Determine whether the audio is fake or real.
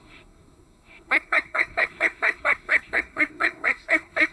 fake